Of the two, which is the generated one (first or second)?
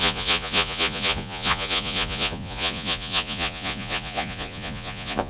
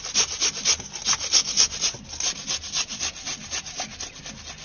first